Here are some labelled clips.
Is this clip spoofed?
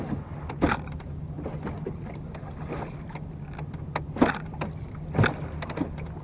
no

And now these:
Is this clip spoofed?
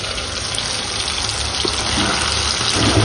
no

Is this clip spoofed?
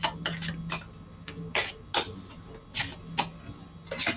no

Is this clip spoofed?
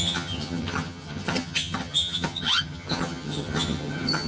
yes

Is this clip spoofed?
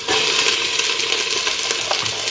no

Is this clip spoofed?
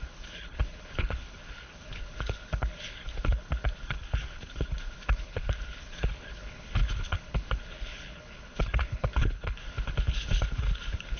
yes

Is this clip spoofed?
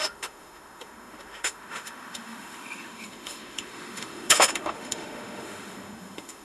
yes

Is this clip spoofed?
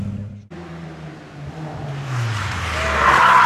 no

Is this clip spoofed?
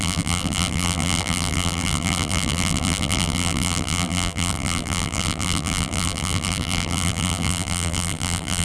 yes